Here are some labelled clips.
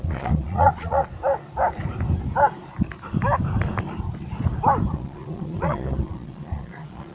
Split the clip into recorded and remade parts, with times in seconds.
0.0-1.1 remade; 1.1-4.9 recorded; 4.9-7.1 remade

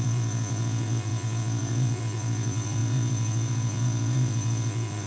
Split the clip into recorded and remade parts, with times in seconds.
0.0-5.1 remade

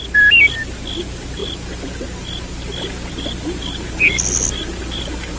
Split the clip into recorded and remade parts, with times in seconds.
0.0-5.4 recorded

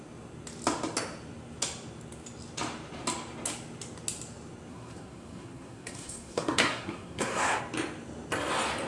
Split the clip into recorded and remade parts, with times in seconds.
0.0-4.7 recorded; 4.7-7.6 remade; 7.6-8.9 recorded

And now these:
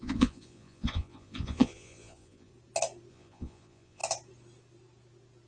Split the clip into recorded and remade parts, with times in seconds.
0.0-2.5 remade; 2.5-3.1 recorded; 3.1-4.0 remade; 4.0-5.5 recorded

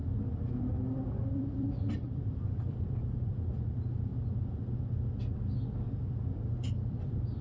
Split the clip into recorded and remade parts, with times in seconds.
0.0-4.1 remade; 4.1-5.3 recorded; 5.3-7.4 remade